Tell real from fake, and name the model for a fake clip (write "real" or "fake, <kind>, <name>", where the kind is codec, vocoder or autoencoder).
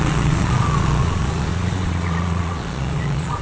fake, vocoder, Vocos